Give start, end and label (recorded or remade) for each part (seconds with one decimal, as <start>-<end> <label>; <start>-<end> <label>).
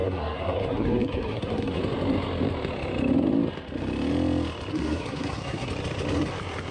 0.0-1.8 remade; 1.8-4.7 recorded; 4.7-5.7 remade; 5.7-6.7 recorded